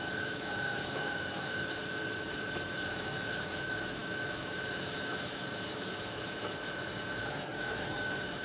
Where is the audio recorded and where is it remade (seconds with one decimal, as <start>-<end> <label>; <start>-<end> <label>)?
0.0-8.4 remade

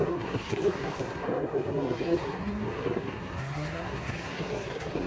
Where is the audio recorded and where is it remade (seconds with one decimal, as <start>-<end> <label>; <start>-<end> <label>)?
0.0-5.1 remade

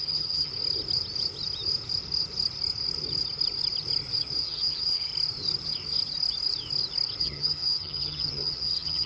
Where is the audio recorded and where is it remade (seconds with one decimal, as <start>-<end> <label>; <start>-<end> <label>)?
0.0-0.5 remade; 0.5-4.4 recorded; 4.4-5.1 remade; 5.1-7.2 recorded; 7.2-9.1 remade